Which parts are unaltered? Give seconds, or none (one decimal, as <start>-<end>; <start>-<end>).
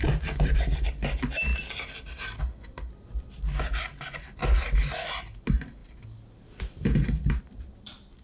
0.0-8.2